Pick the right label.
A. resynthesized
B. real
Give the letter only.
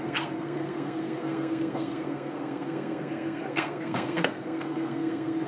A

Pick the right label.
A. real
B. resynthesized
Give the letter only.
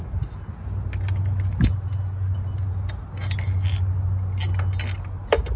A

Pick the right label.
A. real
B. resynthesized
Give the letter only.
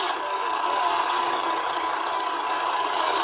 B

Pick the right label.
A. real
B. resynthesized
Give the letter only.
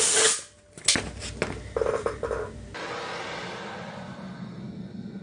A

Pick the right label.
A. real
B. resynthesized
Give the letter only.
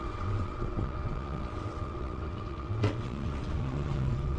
B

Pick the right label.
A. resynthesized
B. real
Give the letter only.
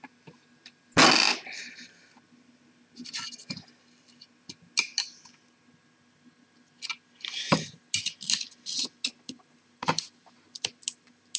B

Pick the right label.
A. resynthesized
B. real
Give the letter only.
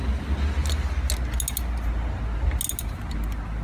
B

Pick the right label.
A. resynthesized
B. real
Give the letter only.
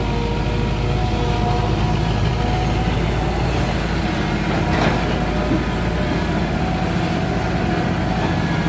B